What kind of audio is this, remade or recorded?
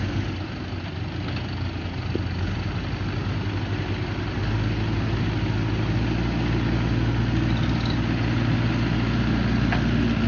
recorded